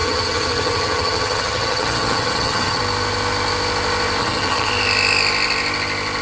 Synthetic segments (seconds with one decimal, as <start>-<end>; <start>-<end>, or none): 0.0-2.8; 4.2-4.7